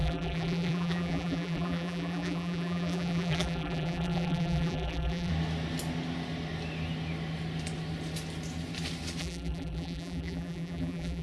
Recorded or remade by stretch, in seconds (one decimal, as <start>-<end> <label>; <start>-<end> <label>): 0.0-5.3 remade; 5.3-9.2 recorded; 9.2-11.2 remade